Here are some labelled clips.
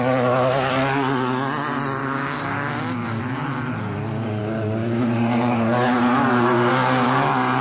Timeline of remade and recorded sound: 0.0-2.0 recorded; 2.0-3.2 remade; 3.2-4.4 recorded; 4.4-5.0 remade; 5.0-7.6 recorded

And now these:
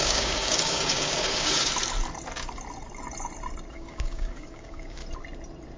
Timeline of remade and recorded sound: 0.0-1.7 remade; 1.7-3.7 recorded; 3.7-5.0 remade; 5.0-5.8 recorded